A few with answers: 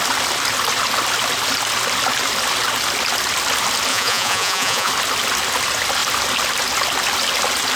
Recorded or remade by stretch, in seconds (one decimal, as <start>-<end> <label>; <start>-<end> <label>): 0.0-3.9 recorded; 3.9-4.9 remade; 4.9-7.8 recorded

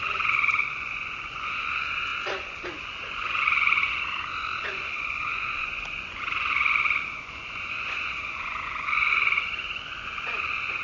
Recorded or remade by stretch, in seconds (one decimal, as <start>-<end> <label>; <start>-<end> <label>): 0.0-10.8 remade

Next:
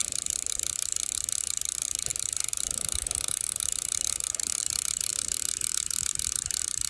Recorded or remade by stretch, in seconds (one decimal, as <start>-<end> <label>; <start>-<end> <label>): 0.0-6.9 recorded